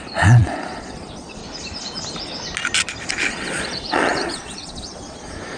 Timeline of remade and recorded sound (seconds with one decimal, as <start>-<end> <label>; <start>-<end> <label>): 0.0-1.4 remade; 1.4-3.3 recorded; 3.3-5.6 remade